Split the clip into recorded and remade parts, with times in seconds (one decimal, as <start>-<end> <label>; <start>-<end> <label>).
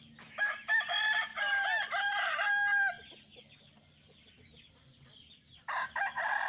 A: 0.0-6.5 recorded